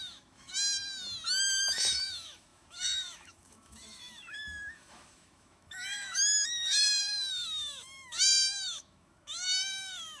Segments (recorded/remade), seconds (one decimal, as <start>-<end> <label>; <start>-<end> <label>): 0.0-0.5 remade; 0.5-1.6 recorded; 1.6-10.2 remade